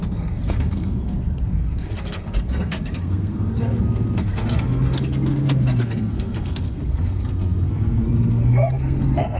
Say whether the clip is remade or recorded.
remade